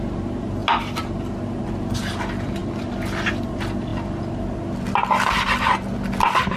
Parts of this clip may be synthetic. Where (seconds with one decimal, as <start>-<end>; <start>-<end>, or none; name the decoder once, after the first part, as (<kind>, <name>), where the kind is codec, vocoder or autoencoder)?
none